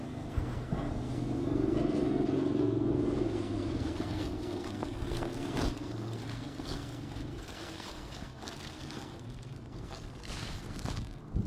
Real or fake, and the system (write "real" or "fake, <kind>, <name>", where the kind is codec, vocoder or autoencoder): fake, codec, SNAC